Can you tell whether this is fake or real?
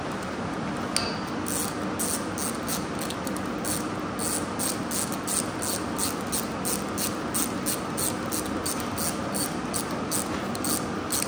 real